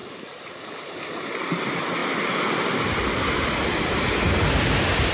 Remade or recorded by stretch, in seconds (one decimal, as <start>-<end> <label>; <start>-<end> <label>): 0.0-2.0 remade; 2.0-5.1 recorded